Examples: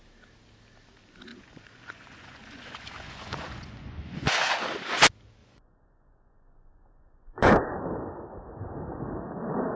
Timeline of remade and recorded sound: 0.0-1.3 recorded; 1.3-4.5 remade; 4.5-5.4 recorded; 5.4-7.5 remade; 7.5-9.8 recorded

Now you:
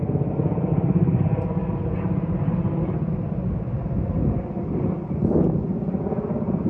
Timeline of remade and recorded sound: 0.0-6.7 recorded

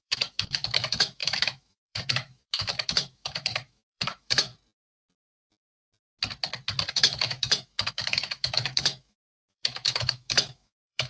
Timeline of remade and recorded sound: 0.0-4.5 remade; 4.5-6.9 recorded; 6.9-11.1 remade

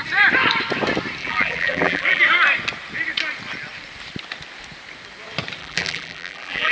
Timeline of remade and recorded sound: 0.0-1.2 recorded; 1.2-2.2 remade; 2.2-5.6 recorded; 5.6-6.7 remade

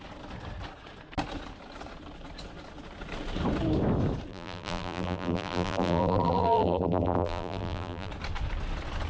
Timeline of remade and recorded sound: 0.0-4.3 recorded; 4.3-8.1 remade; 8.1-9.1 recorded

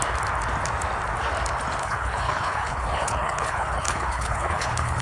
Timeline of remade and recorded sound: 0.0-1.8 recorded; 1.8-5.0 remade

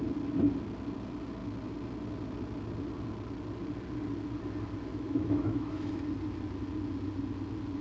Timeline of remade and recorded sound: 0.0-4.9 recorded; 4.9-6.0 remade; 6.0-7.8 recorded

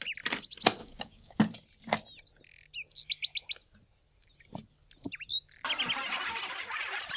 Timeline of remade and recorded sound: 0.0-0.8 recorded; 0.8-1.4 remade; 1.4-7.2 recorded